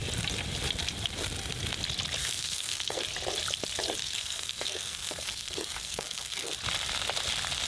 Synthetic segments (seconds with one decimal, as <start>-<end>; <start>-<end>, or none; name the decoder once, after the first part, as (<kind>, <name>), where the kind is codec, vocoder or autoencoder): 2.2-3.0 (codec, SNAC); 4.0-6.5